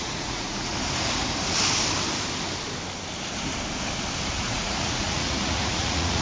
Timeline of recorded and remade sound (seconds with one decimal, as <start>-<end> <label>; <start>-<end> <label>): 0.0-0.7 remade; 0.7-4.4 recorded; 4.4-6.2 remade